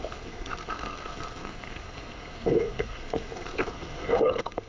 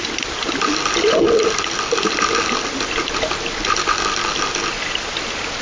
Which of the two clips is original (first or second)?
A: second